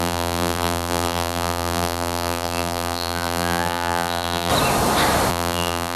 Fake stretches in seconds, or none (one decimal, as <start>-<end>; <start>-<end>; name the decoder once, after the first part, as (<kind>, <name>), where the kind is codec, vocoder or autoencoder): 0.0-4.5 (vocoder, BigVGAN v2); 5.3-6.0